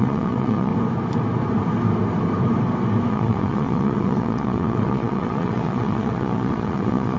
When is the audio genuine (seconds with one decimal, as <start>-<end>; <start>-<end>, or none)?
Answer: 0.7-3.1